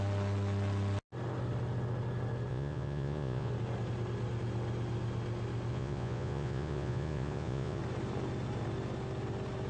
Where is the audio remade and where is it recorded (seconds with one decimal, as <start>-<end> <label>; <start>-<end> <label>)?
0.0-2.5 recorded; 2.5-3.5 remade; 3.5-5.7 recorded; 5.7-7.8 remade; 7.8-9.7 recorded